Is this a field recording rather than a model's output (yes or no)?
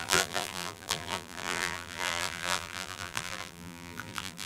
no